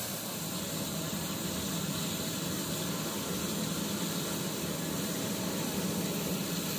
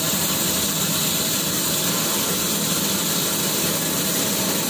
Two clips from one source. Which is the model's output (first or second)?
first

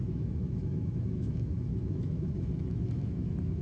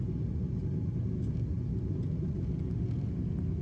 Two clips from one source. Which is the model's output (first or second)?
first